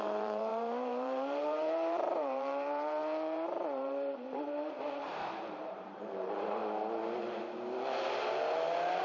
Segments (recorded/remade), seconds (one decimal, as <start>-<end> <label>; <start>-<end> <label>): 0.0-6.6 remade; 6.6-9.0 recorded